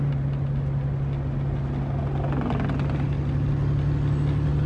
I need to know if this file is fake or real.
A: real